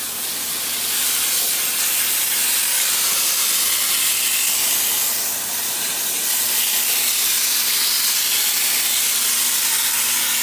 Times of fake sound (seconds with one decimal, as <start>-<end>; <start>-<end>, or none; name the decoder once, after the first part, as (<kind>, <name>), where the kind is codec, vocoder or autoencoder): none